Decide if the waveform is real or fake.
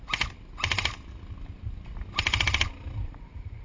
real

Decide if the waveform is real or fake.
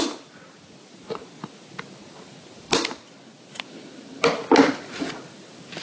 real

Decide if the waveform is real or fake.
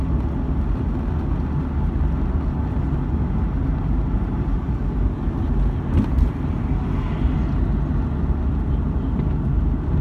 real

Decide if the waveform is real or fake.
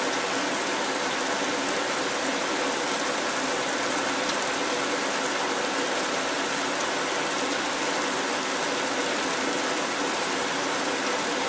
real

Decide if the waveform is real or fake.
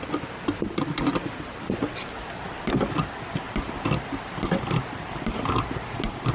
real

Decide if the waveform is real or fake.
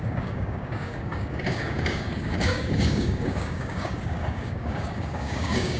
fake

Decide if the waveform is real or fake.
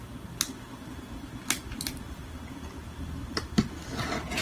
real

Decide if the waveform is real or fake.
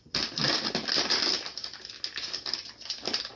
real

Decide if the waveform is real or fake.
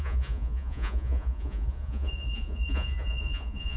fake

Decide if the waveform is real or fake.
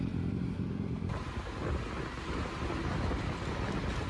real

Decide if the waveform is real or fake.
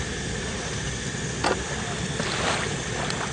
real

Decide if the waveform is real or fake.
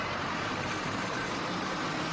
fake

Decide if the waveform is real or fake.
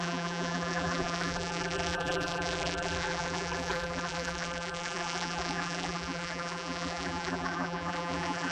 fake